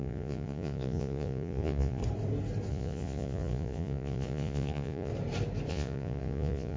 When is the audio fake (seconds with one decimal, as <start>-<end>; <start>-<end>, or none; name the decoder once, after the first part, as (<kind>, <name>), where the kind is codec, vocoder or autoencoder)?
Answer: 0.0-2.0 (vocoder, Vocos); 2.7-5.1; 5.7-6.8